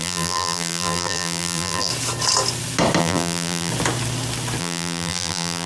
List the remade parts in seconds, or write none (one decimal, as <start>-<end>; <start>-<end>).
0.0-1.9; 3.0-3.7; 4.6-5.7